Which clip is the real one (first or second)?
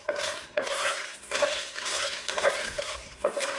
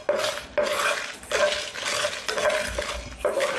second